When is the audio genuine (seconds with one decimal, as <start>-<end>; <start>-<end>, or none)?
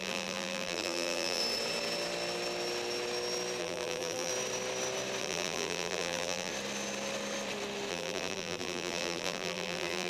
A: 1.4-3.6; 4.3-5.2; 6.5-7.9